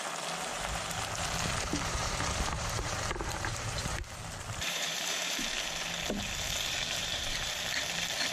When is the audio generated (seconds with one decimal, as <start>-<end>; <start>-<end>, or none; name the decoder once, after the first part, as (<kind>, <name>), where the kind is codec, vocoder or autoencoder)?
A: 0.5-5.5 (vocoder, BigVGAN v2); 7.0-7.6